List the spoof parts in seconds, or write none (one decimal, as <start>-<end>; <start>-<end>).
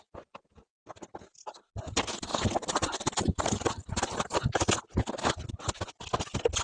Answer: 2.3-4.7